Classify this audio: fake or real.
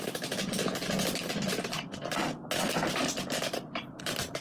real